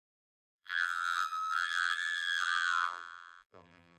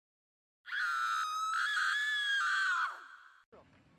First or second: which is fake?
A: first